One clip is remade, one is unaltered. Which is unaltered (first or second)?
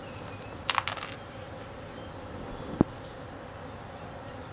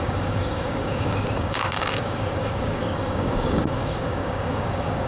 first